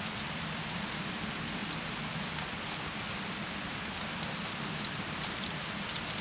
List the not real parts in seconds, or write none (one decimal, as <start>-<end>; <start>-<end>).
none